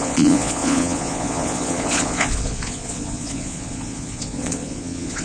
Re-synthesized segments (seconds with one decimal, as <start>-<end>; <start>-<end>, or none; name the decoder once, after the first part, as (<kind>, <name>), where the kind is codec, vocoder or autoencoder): 0.0-5.2 (vocoder, Vocos)